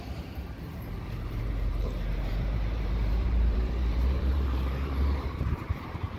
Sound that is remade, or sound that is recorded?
remade